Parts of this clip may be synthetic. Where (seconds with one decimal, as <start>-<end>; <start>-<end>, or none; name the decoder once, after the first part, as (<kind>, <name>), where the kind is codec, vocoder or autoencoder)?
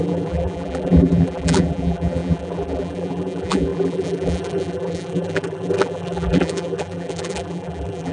0.0-8.1 (vocoder, BigVGAN v2)